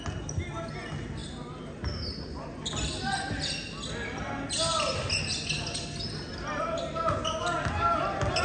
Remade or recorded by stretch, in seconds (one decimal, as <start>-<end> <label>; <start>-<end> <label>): 0.0-8.4 recorded